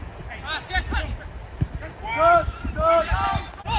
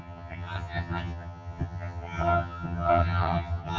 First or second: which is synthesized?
second